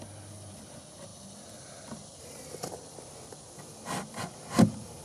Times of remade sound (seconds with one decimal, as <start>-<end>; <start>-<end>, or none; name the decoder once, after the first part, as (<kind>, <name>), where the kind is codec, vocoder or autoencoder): none